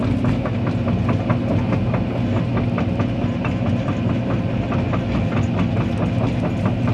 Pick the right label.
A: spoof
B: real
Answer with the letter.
B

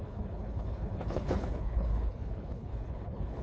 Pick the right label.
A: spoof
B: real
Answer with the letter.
A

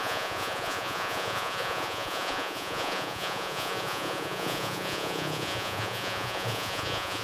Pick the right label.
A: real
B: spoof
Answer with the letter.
B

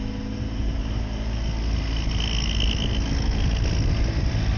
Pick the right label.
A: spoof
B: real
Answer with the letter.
B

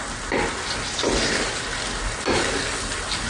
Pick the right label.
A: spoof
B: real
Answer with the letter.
B